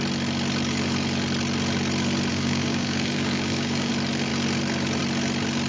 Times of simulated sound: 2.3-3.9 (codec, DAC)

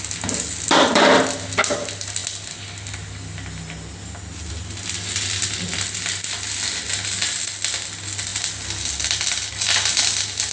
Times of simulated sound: none

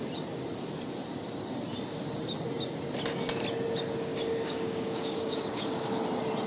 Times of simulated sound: 4.1-6.0 (codec, DAC)